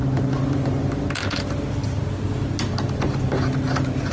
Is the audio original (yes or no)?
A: yes